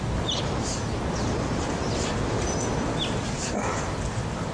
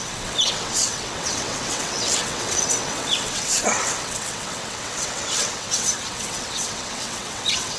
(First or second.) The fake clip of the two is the second